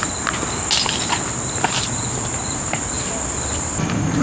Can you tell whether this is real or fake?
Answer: real